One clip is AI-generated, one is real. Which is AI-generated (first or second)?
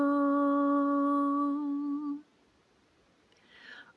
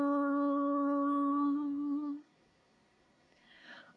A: second